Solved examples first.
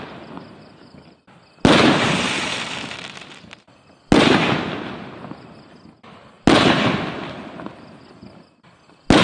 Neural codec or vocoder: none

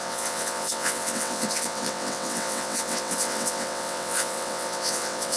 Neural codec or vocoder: vocoder, WaveNeXt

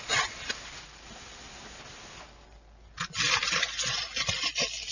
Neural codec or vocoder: none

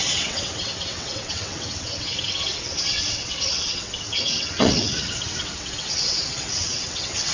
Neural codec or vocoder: vocoder, WaveNeXt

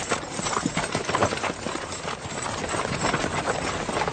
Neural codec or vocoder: none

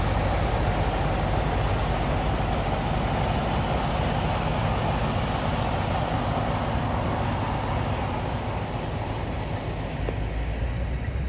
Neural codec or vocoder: none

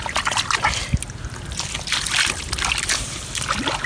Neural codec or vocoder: none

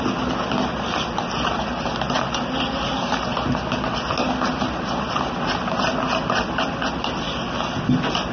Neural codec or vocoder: none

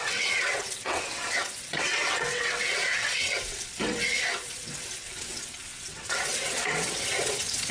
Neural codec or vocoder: vocoder, WaveNeXt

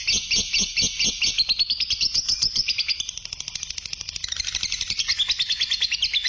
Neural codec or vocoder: none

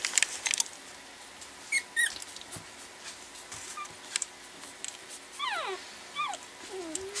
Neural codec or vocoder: none